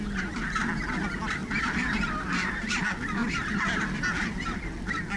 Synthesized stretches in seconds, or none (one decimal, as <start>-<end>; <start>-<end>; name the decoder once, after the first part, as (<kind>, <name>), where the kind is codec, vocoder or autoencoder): 1.4-2.5 (vocoder, BigVGAN v2); 3.2-4.6